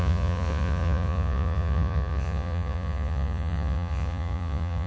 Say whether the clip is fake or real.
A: fake